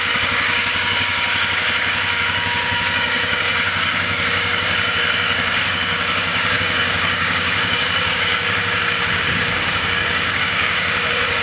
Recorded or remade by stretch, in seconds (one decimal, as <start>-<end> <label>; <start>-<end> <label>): 0.0-11.4 remade

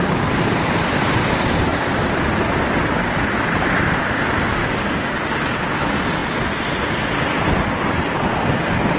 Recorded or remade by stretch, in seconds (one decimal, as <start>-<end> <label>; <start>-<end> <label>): 0.0-4.6 recorded; 4.6-5.4 remade; 5.4-9.0 recorded